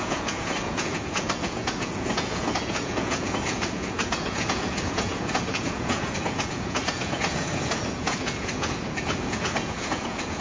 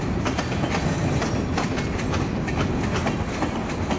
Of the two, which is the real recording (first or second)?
second